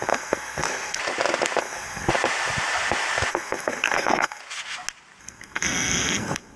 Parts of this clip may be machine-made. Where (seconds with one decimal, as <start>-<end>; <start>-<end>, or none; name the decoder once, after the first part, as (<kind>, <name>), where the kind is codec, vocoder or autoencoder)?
0.0-1.0 (codec, SNAC); 1.6-2.1; 3.3-4.4; 5.2-6.6

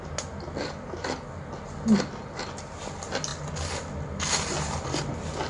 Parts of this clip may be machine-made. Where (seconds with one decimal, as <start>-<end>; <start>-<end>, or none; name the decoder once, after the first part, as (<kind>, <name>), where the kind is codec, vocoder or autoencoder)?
none

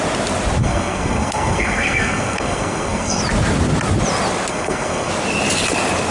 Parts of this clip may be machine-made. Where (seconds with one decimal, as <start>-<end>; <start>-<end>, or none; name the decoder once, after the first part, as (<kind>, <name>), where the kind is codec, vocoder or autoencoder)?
0.6-3.2 (codec, SNAC); 4.5-5.1